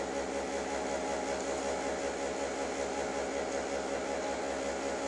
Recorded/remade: recorded